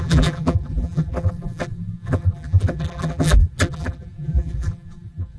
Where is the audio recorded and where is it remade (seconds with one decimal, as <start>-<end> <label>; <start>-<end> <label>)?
0.0-5.4 remade